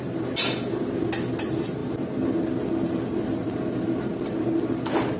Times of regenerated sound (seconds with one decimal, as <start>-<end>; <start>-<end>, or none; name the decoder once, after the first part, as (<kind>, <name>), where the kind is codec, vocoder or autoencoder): none